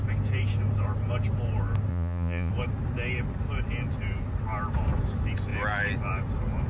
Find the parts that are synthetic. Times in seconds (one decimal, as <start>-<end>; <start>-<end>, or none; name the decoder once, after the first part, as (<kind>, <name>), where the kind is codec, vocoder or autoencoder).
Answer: 1.9-2.5 (vocoder, Vocos)